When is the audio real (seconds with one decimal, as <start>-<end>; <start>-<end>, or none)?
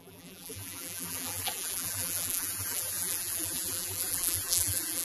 none